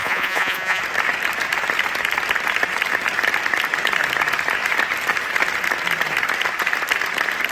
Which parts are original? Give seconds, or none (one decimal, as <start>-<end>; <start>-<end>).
0.8-7.5